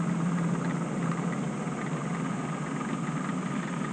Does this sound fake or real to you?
real